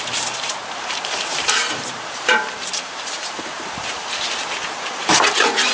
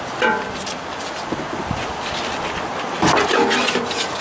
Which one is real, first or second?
second